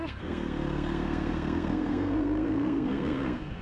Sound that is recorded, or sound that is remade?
remade